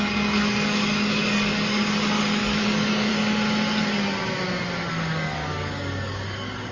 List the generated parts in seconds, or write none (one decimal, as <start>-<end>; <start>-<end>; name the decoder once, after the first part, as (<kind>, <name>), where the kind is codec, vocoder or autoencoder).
0.0-3.1 (codec, DAC); 4.9-6.7